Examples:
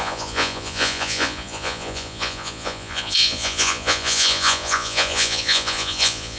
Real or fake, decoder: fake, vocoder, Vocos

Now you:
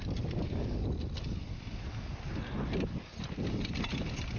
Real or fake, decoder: real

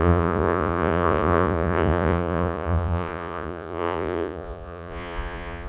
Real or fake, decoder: fake, vocoder, Vocos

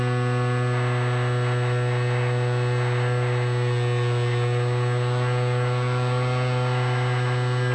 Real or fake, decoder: real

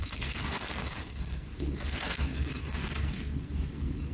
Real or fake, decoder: fake, codec, SNAC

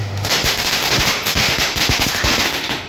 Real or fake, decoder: fake, autoencoder, DAC-VAE